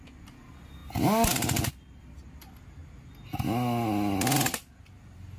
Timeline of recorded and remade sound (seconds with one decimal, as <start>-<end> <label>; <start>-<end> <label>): 0.0-5.4 recorded